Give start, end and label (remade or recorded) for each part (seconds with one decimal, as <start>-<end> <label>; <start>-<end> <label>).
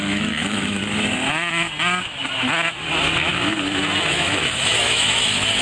0.0-0.8 remade; 0.8-4.1 recorded; 4.1-5.6 remade